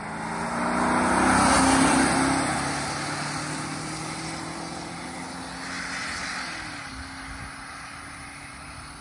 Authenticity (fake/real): real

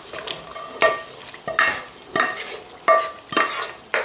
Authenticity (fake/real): real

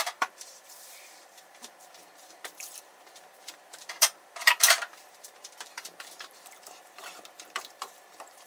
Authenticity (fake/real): fake